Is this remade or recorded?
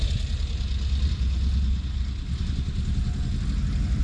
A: recorded